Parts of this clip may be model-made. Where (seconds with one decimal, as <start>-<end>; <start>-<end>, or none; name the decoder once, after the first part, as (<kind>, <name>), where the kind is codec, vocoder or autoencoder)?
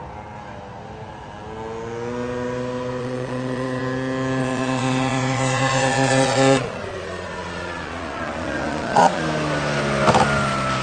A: 3.0-3.8 (vocoder, Vocos); 4.4-9.2